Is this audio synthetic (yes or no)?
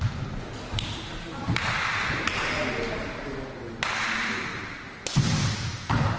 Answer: no